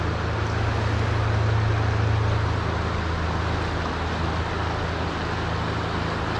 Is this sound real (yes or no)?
yes